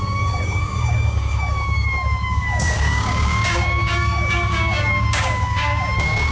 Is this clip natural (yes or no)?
no